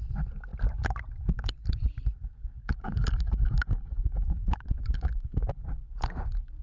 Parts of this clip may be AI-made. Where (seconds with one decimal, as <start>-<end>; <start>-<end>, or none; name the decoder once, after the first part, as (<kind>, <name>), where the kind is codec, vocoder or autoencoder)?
2.6-5.5 (codec, DAC)